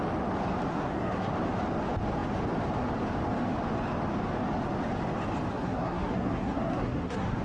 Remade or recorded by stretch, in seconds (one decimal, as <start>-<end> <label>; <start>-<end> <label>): 0.0-0.7 recorded; 0.7-1.3 remade; 1.3-5.5 recorded; 5.5-7.4 remade